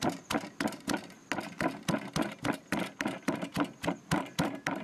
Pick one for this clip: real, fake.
real